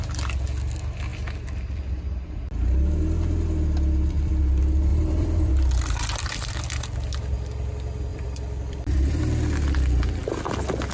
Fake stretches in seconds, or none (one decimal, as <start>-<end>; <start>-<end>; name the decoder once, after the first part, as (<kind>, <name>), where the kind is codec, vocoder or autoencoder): 4.9-5.5 (vocoder, BigVGAN v2); 8.1-9.2